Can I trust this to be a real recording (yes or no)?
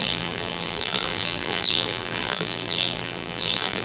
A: no